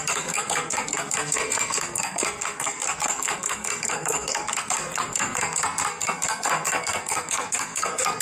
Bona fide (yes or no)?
no